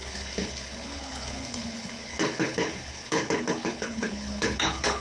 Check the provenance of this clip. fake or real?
fake